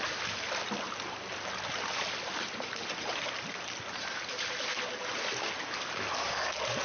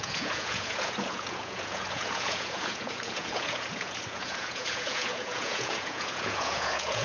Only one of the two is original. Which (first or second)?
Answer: first